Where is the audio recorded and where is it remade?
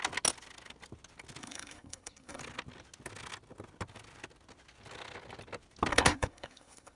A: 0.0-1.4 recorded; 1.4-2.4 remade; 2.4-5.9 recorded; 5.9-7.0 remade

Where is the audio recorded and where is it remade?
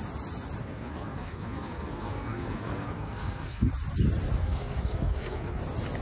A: 0.0-0.6 recorded; 0.6-3.7 remade; 3.7-4.4 recorded; 4.4-5.6 remade; 5.6-6.0 recorded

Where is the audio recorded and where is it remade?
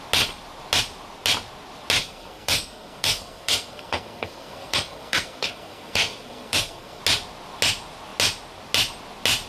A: 0.0-2.0 recorded; 2.0-7.0 remade; 7.0-9.5 recorded